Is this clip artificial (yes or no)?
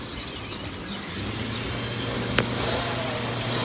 no